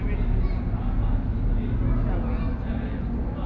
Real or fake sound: real